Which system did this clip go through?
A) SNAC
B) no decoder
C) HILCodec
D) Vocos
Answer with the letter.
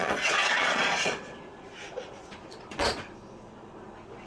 D